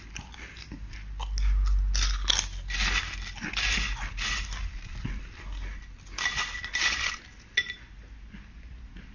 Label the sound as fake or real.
real